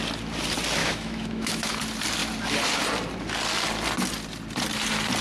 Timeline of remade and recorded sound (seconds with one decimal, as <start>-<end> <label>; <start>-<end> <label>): 0.0-0.8 recorded; 0.8-1.8 remade; 1.8-5.2 recorded